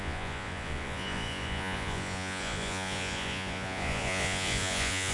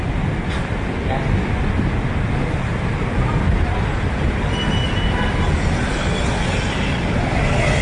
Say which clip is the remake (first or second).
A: first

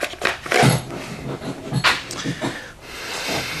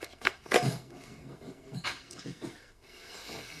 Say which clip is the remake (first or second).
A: second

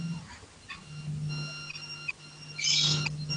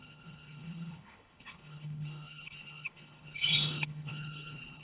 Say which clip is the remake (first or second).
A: second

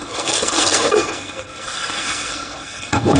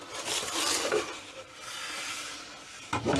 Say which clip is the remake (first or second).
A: first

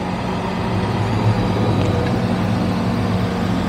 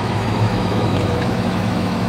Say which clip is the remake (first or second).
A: second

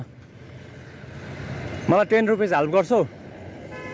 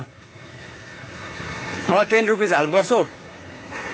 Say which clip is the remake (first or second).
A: second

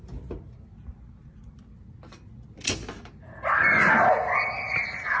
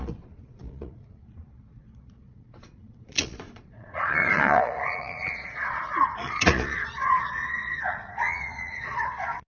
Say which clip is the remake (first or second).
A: second